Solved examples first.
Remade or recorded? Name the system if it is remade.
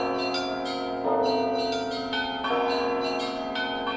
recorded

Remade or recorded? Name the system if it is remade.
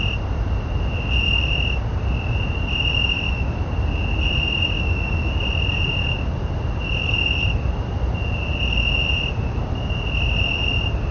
recorded